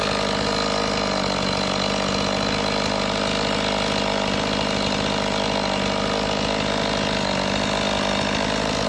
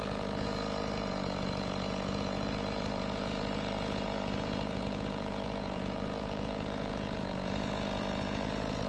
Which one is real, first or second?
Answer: first